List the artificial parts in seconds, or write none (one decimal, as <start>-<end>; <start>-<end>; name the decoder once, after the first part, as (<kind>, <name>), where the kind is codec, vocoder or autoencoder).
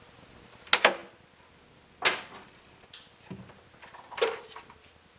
none